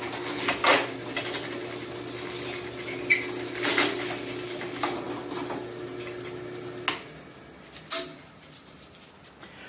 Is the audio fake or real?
real